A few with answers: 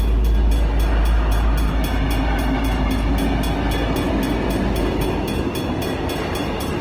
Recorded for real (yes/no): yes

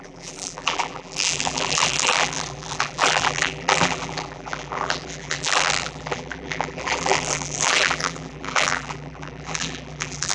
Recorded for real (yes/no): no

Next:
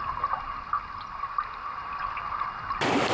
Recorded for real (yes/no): yes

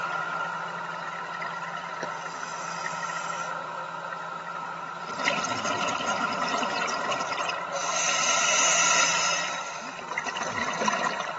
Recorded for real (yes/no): yes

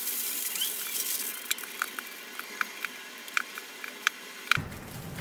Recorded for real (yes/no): no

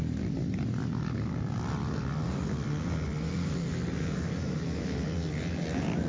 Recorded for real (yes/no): yes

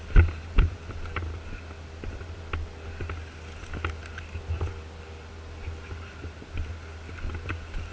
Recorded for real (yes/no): yes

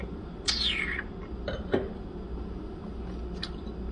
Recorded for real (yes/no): yes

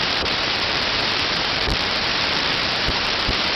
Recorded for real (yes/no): no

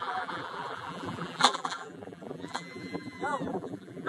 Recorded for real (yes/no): no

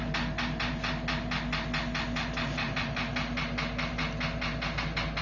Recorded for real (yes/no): yes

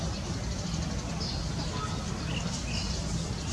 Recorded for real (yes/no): yes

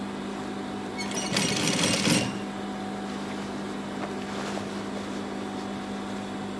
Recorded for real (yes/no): yes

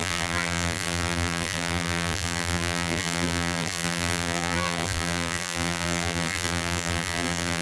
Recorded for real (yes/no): no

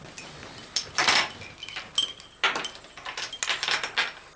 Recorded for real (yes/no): yes